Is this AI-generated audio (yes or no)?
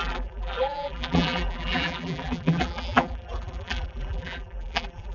yes